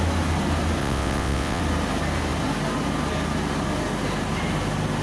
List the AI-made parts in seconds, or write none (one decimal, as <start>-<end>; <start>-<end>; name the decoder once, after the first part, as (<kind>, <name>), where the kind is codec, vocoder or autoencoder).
0.8-1.6 (vocoder, WaveNeXt)